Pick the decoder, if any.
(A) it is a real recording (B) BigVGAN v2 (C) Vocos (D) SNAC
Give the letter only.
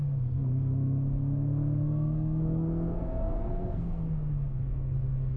D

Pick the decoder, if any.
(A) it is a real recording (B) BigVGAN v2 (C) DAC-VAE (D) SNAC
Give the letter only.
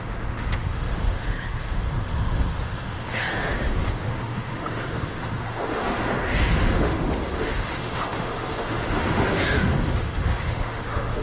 C